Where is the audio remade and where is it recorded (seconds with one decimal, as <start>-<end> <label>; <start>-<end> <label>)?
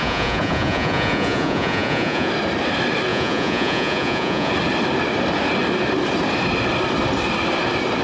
0.0-2.3 remade; 2.3-3.1 recorded; 3.1-4.5 remade; 4.5-8.0 recorded